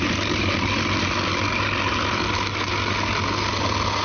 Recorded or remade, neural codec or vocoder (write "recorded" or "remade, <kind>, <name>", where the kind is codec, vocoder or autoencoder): recorded